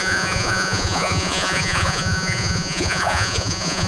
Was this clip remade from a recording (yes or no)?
yes